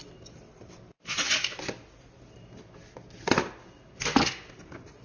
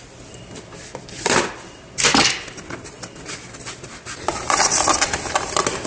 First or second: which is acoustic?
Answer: first